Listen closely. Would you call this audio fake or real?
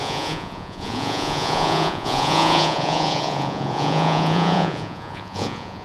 fake